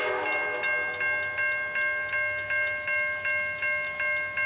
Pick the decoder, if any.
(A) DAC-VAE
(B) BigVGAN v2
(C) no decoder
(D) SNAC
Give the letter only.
C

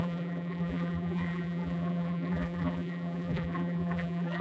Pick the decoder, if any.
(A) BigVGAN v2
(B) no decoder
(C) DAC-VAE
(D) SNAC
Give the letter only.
A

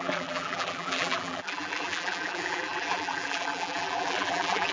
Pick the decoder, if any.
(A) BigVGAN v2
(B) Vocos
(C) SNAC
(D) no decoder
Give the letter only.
A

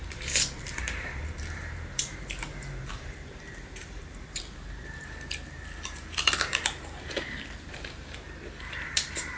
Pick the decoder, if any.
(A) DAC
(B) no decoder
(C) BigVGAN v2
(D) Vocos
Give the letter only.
C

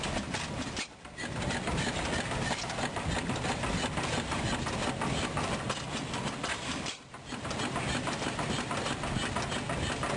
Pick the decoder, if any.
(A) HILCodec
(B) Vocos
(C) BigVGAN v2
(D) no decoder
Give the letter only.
D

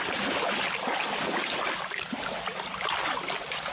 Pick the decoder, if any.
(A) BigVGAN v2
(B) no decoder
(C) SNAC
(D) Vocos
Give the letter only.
B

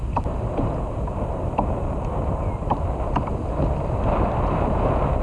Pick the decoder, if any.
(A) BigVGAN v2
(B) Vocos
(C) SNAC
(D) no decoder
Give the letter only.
D